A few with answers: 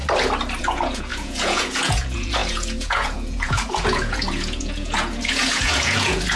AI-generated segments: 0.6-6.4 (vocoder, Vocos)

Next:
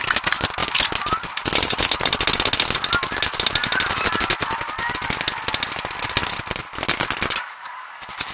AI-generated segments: none

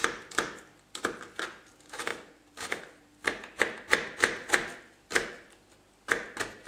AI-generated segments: 0.0-1.2 (vocoder, BigVGAN v2); 2.1-2.8

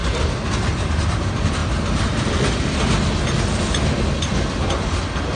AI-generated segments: 1.2-1.6 (vocoder, BigVGAN v2); 4.8-5.4

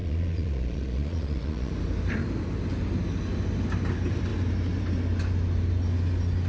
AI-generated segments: 0.0-1.7 (vocoder, Vocos)